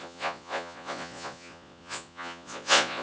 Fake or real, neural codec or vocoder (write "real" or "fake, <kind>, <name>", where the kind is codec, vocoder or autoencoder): fake, vocoder, Vocos